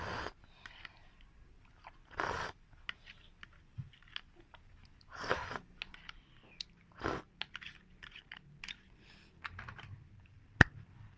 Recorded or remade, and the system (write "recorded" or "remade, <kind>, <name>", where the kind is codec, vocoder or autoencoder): recorded